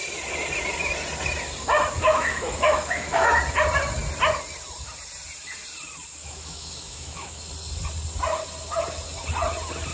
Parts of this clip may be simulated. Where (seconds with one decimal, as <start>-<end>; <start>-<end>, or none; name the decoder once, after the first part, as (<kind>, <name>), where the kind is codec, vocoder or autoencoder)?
2.0-3.4 (autoencoder, DAC-VAE); 6.2-7.4